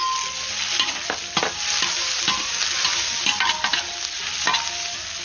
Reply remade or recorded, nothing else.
recorded